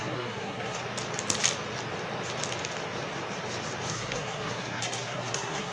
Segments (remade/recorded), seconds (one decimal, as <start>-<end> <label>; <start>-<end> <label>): 0.0-0.8 remade; 0.8-3.9 recorded; 3.9-5.7 remade